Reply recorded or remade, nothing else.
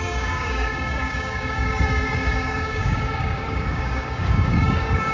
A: remade